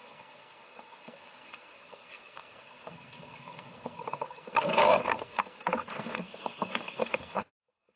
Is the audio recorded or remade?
remade